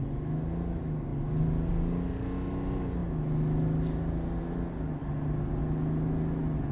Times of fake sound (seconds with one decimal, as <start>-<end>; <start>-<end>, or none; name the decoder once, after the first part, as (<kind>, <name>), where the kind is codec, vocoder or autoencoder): none